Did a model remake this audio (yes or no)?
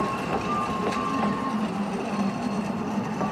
no